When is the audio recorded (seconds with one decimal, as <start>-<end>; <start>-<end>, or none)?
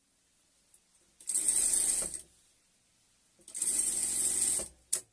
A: 0.0-5.1